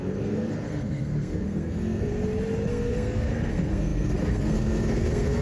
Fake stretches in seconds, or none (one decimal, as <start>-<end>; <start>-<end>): 0.0-2.1; 2.7-5.4